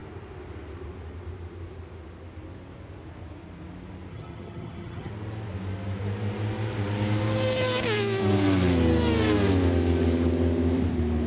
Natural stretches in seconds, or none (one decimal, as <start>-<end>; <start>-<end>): 0.0-4.1; 5.1-11.3